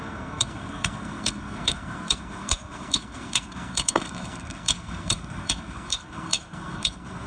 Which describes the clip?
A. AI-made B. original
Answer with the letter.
A